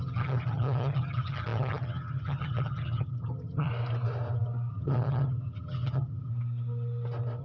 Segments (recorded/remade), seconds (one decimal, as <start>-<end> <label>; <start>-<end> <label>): 0.0-3.7 remade; 3.7-4.7 recorded; 4.7-6.3 remade; 6.3-7.4 recorded